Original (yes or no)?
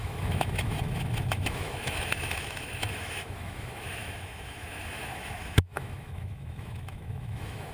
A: no